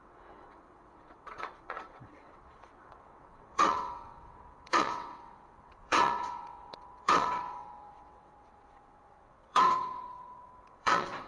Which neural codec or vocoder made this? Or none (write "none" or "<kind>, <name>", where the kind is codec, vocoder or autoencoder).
vocoder, WaveNeXt